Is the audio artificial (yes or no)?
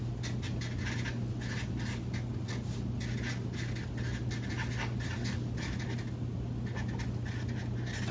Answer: no